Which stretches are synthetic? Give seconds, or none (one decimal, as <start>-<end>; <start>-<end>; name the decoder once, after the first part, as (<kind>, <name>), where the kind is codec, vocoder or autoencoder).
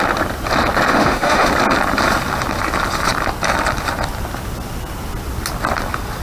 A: 0.9-1.5 (autoencoder, DAC-VAE)